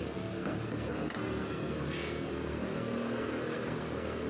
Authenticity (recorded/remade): remade